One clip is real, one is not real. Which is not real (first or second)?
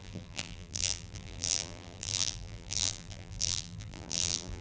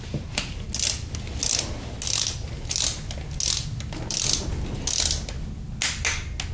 first